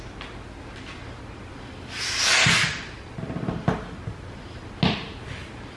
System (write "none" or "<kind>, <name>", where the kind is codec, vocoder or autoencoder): none